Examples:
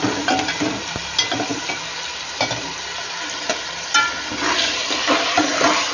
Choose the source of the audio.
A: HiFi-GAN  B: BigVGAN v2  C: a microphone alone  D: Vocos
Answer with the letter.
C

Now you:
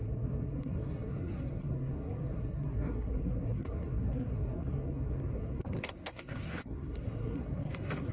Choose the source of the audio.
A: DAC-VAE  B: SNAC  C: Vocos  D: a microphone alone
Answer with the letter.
B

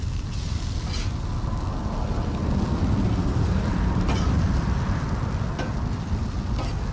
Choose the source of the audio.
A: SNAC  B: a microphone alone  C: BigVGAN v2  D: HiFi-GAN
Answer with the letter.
B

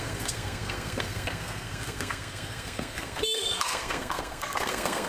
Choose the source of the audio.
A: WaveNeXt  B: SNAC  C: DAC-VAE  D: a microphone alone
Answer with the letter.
B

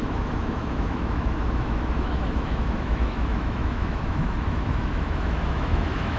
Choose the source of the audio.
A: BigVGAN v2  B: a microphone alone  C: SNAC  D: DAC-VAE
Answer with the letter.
D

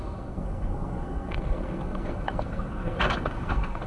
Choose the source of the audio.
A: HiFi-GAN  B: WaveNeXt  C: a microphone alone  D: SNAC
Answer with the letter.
D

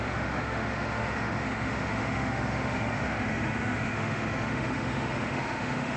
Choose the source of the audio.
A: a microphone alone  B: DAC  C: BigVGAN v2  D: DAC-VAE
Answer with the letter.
D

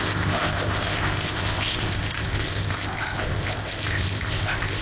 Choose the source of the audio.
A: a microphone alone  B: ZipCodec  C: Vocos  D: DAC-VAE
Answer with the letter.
B